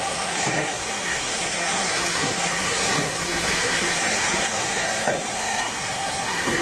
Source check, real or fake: fake